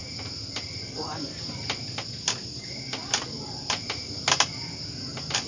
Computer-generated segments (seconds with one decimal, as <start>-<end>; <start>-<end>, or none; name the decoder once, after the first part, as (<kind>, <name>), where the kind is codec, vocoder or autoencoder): none